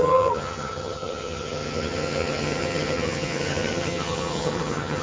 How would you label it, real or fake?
fake